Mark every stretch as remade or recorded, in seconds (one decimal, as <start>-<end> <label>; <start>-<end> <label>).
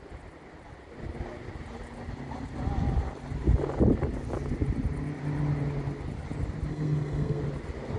0.0-6.7 recorded; 6.7-7.4 remade; 7.4-8.0 recorded